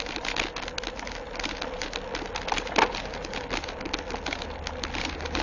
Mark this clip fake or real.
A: real